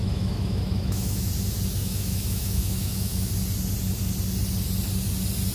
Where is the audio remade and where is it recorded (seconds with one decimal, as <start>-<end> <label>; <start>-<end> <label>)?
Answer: 0.0-1.3 remade; 1.3-1.8 recorded; 1.8-3.3 remade; 3.3-5.5 recorded